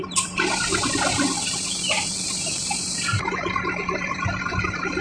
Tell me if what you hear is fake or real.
real